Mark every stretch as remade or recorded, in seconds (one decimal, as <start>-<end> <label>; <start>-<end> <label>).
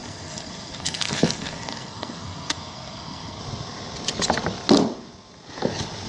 0.0-3.4 remade; 3.4-6.1 recorded